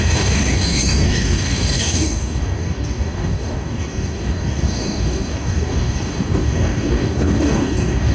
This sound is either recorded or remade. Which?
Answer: remade